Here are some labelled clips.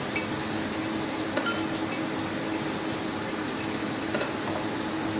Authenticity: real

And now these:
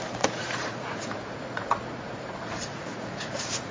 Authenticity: fake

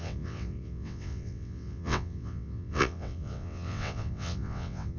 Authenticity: fake